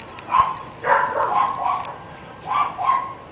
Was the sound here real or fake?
real